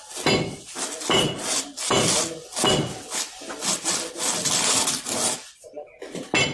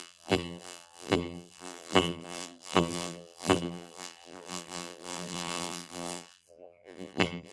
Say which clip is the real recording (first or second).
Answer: first